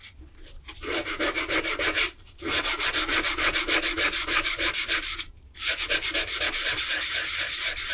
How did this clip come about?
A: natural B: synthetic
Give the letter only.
B